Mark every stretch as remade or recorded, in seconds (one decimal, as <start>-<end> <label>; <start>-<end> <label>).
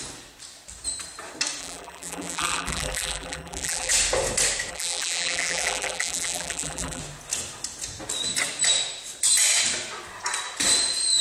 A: 0.0-1.6 recorded; 1.6-3.9 remade; 3.9-4.7 recorded; 4.7-7.0 remade; 7.0-11.2 recorded